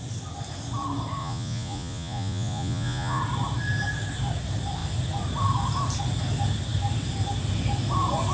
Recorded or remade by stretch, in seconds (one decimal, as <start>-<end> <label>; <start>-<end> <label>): 0.0-1.2 recorded; 1.2-3.2 remade; 3.2-8.3 recorded